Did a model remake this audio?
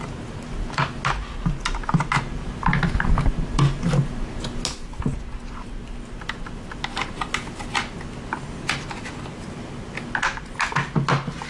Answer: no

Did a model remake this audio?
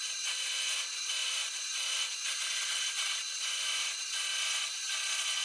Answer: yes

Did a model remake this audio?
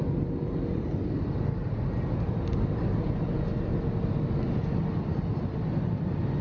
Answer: no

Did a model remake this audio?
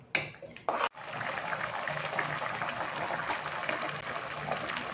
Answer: no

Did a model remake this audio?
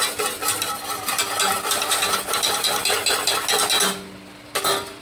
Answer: no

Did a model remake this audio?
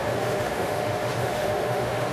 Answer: yes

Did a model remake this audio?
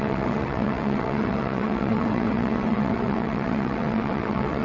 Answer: yes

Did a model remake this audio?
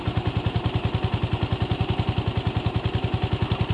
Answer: no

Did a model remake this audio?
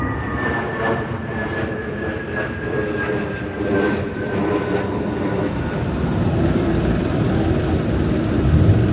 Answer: yes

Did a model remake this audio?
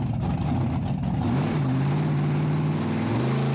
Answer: no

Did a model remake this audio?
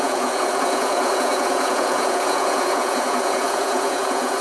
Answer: yes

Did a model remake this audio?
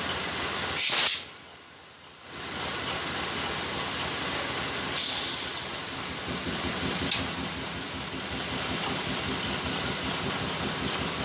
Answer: no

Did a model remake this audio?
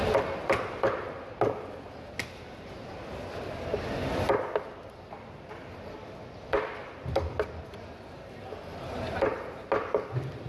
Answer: no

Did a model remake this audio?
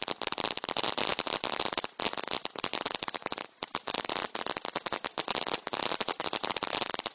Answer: no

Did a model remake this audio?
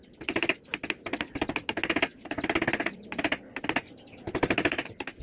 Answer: no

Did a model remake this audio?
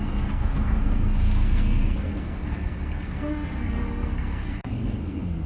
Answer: yes